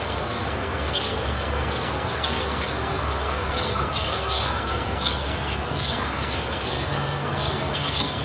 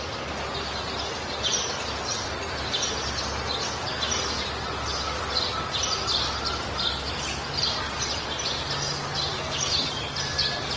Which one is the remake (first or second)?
first